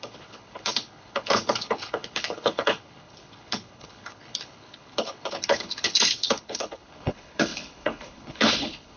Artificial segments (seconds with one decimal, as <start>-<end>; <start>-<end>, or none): 0.0-9.0